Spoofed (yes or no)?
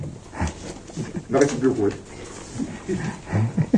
no